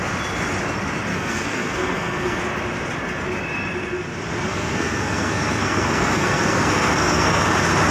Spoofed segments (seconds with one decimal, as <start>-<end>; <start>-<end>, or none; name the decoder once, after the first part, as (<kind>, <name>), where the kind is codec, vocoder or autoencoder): 1.1-2.4 (codec, SNAC); 4.5-7.5